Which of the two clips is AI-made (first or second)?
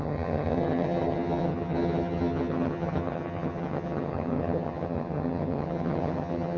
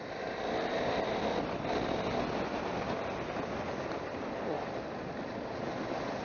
first